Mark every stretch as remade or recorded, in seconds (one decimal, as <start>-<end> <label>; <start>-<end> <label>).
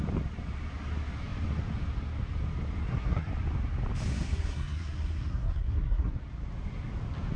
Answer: 0.0-2.8 recorded; 2.8-3.3 remade; 3.3-4.1 recorded; 4.1-6.2 remade; 6.2-7.4 recorded